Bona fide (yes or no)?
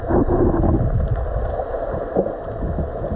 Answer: yes